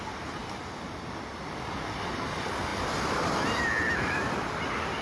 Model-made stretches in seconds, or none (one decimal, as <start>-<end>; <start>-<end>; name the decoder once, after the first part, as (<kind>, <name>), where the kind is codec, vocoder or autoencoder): 0.4-2.2 (vocoder, BigVGAN v2); 2.7-4.5